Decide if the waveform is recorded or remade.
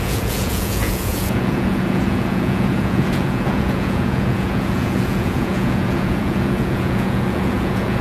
remade